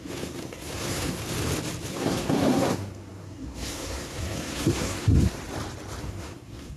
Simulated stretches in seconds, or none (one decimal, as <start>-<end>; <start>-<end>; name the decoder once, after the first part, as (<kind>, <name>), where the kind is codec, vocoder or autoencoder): 0.0-1.2 (codec, SNAC); 1.9-5.4; 6.0-6.8